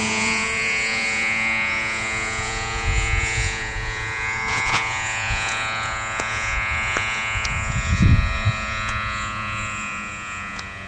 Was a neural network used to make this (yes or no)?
yes